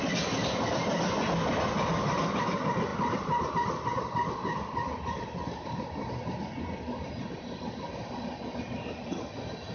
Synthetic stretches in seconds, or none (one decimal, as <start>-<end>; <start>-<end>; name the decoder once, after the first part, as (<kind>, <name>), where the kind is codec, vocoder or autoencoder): none